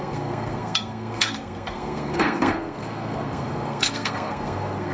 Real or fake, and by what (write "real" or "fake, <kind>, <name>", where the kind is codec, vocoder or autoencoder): fake, codec, SNAC